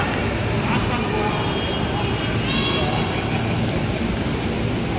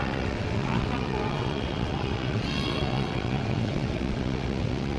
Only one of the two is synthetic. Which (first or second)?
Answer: second